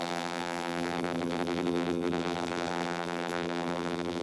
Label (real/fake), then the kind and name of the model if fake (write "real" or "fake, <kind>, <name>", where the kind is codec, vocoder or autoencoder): fake, vocoder, BigVGAN v2